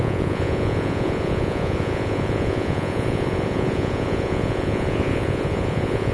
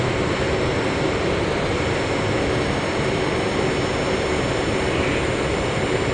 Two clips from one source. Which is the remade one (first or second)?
first